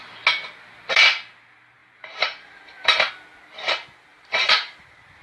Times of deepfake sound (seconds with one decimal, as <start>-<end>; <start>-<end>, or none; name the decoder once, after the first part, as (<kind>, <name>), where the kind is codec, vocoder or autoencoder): 1.8-3.1 (vocoder, BigVGAN v2); 4.1-5.2